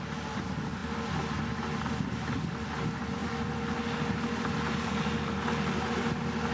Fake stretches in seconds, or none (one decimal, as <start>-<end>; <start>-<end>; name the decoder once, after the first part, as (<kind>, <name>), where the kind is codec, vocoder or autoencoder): none